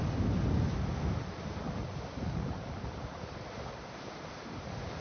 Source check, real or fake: real